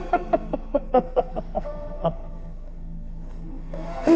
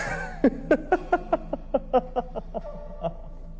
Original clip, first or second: second